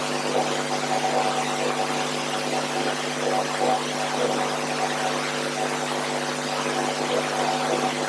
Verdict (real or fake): real